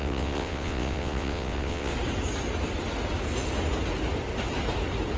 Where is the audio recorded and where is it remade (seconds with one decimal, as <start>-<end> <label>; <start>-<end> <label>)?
0.0-1.9 remade; 1.9-5.2 recorded